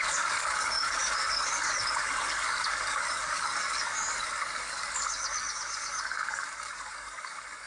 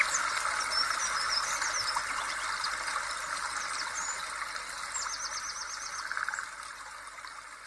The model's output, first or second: first